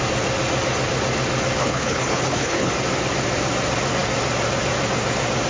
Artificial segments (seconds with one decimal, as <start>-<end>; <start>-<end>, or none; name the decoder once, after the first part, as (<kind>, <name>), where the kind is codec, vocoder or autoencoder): 1.6-2.7 (codec, HILCodec)